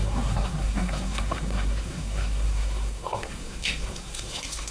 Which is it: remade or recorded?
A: remade